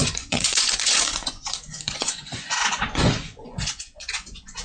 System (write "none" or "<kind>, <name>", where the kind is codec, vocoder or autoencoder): vocoder, Vocos